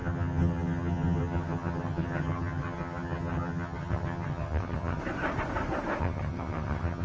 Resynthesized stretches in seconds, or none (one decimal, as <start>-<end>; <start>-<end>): 0.0-5.0; 6.0-7.0

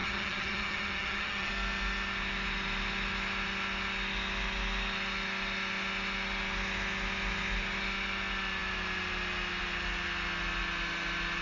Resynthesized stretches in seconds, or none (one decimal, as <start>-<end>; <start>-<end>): 0.0-1.5

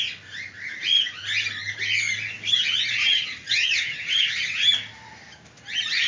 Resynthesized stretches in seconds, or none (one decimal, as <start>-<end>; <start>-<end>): 3.0-4.2